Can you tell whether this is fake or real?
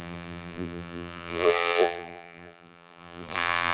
fake